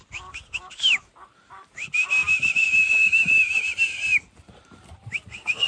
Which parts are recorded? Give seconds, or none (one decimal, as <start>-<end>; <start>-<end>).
0.0-2.2; 5.2-5.7

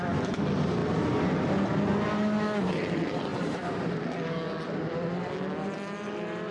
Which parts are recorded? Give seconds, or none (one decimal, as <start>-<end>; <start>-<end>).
0.0-3.3; 4.0-6.5

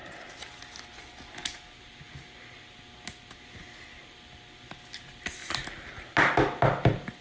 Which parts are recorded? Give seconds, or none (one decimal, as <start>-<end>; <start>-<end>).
0.0-7.2

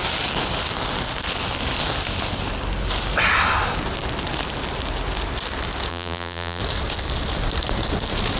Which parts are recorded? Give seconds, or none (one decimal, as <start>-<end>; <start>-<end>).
0.0-5.9; 6.6-8.4

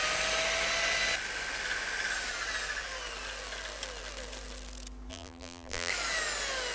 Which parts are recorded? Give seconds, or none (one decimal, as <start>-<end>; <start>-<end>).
0.0-5.1; 5.9-6.7

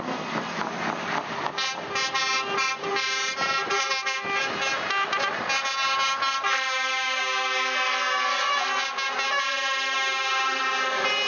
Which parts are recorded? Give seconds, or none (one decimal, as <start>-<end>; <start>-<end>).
0.0-11.3